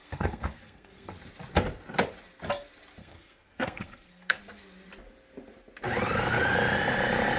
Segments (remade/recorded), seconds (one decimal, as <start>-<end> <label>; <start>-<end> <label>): 0.0-1.1 remade; 1.1-3.0 recorded; 3.0-4.4 remade; 4.4-7.4 recorded